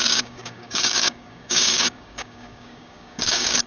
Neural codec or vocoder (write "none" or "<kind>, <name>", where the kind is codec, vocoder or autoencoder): codec, DAC